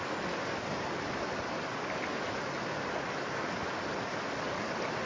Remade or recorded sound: recorded